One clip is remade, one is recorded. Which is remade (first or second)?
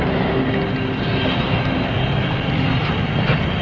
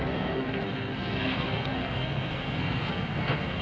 second